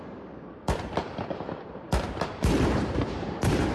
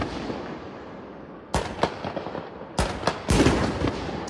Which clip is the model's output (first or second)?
first